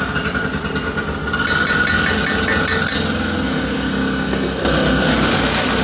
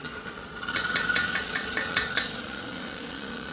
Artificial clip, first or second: second